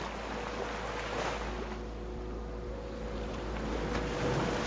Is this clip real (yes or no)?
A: yes